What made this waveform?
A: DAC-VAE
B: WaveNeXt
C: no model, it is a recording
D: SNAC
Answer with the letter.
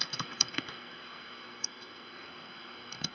D